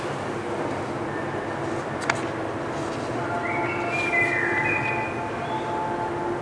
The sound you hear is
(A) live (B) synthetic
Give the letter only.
A